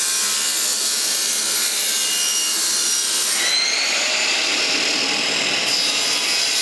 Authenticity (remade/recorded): recorded